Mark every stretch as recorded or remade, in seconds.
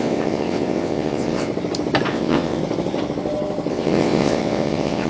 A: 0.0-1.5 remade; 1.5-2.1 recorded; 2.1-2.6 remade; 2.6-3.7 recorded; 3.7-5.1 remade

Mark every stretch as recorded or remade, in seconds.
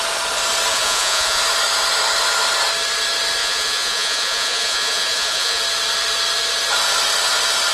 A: 0.0-0.7 recorded; 0.7-1.4 remade; 1.4-3.4 recorded; 3.4-5.6 remade; 5.6-7.7 recorded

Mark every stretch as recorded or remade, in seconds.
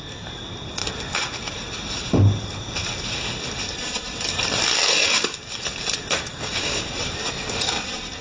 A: 0.0-6.3 recorded; 6.3-6.8 remade; 6.8-8.2 recorded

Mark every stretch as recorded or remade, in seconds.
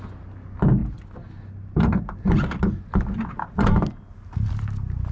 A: 0.0-5.1 recorded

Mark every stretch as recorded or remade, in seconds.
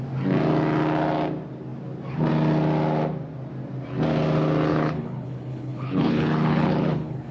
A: 0.0-4.7 recorded; 4.7-7.3 remade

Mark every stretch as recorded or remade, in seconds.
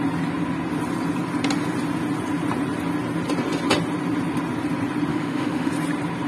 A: 0.0-5.1 recorded; 5.1-5.7 remade; 5.7-6.3 recorded